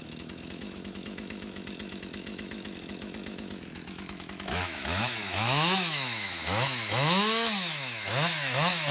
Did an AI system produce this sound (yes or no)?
yes